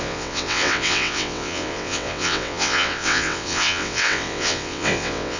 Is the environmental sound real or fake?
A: fake